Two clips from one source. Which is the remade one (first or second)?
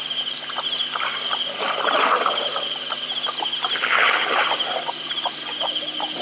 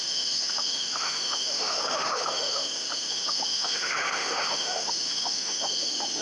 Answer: second